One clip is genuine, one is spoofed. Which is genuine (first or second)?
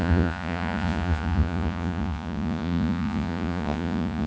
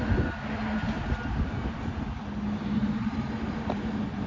second